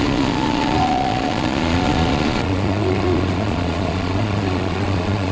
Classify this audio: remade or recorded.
remade